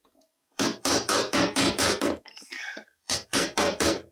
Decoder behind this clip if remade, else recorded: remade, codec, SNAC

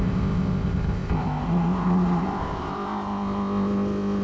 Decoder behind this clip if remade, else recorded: remade, codec, ZipCodec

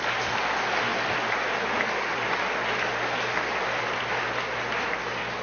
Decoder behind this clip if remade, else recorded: recorded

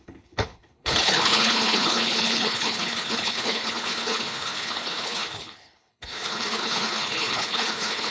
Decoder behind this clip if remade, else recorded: remade, codec, HILCodec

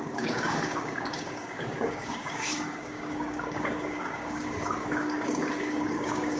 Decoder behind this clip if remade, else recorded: remade, codec, DAC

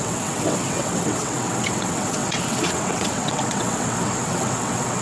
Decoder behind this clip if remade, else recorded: remade, vocoder, WaveNeXt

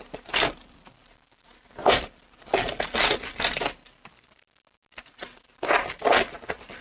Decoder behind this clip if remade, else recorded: recorded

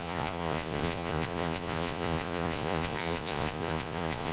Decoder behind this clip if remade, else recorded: remade, vocoder, Vocos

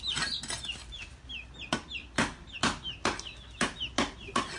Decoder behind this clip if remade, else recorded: recorded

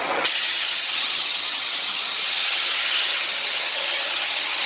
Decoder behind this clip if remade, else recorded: remade, vocoder, HiFi-GAN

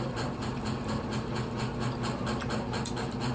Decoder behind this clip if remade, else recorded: recorded